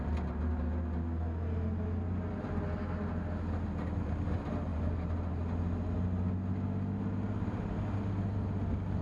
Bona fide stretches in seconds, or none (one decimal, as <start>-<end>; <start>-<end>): 0.0-9.0